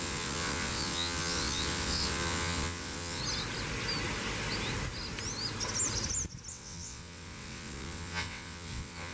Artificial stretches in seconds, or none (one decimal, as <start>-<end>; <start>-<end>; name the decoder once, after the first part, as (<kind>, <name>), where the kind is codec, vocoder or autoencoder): 0.0-3.2 (vocoder, WaveNeXt); 6.5-9.1